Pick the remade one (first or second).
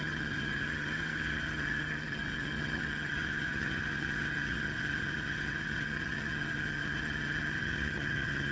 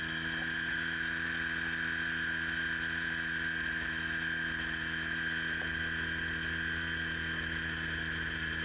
first